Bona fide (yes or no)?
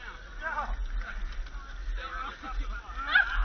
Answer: yes